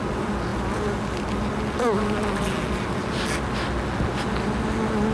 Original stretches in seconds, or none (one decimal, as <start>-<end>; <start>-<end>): 0.0-5.1